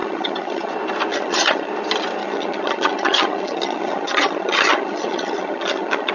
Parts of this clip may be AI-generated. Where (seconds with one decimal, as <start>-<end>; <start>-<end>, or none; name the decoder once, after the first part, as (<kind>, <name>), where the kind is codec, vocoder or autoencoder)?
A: 0.0-0.7 (vocoder, HiFi-GAN); 1.1-1.7; 2.2-6.1